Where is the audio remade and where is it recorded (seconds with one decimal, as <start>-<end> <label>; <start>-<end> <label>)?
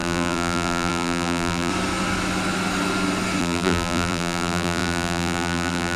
0.0-1.7 remade; 1.7-3.4 recorded; 3.4-6.0 remade